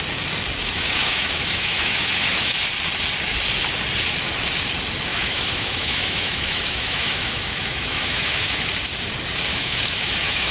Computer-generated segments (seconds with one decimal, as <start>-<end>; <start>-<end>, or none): 0.6-2.5; 5.1-8.7; 9.5-10.5